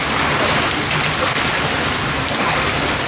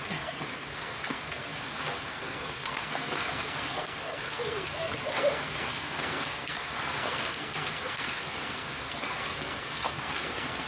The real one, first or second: first